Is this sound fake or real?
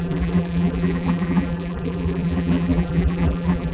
fake